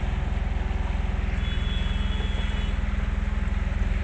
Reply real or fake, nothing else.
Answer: real